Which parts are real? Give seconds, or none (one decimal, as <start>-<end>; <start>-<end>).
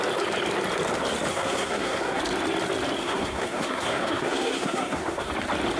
0.0-1.3; 2.2-3.0; 5.3-5.8